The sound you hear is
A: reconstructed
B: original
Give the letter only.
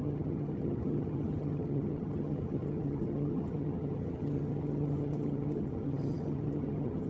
A